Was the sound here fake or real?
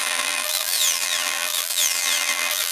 fake